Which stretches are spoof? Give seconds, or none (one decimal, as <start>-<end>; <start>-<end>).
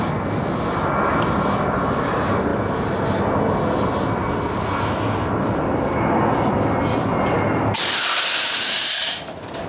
0.7-2.5; 5.2-9.7